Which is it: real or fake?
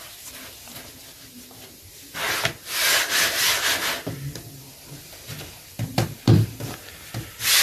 real